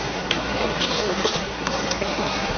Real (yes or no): no